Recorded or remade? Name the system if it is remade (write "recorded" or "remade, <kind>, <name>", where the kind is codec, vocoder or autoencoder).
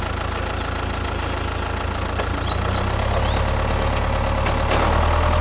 recorded